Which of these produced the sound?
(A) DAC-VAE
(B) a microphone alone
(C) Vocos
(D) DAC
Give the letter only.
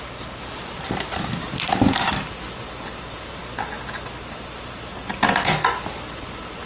B